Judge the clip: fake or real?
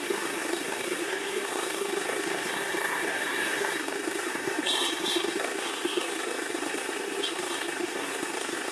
fake